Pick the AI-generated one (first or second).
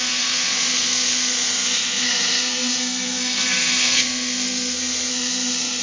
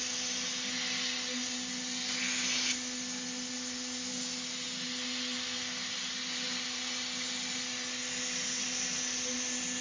first